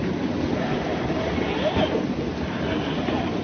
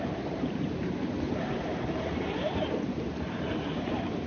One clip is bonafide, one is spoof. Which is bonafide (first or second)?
first